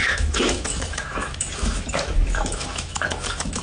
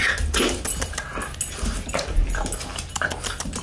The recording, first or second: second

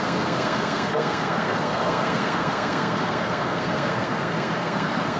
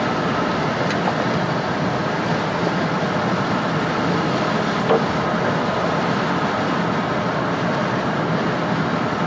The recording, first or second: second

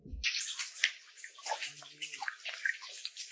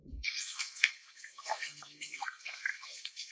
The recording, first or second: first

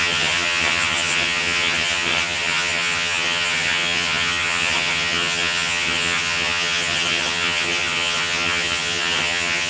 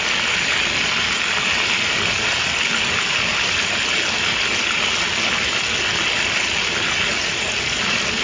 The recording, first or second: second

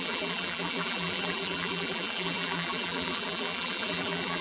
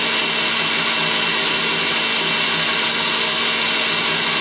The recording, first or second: second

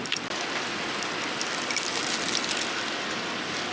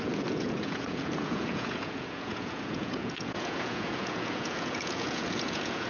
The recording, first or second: first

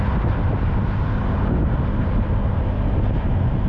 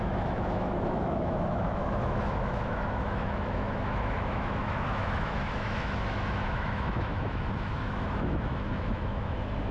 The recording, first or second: first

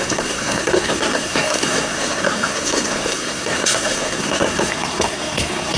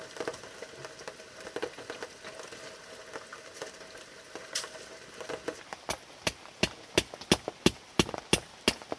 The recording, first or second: second